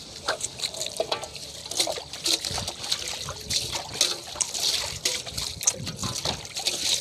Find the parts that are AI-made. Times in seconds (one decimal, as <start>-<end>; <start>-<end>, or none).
none

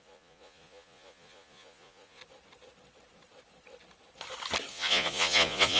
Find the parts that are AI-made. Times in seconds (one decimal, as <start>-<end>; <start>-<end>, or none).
0.0-2.2; 4.7-5.8

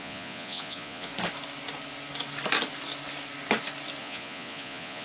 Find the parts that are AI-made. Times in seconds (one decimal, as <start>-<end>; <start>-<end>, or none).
0.0-1.1; 4.0-5.0